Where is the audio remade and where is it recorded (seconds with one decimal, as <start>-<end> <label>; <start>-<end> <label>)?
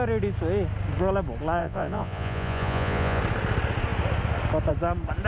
0.0-1.6 recorded; 1.6-3.2 remade; 3.2-5.3 recorded